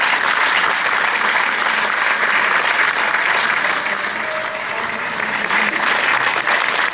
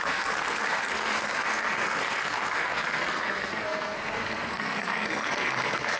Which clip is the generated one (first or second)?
second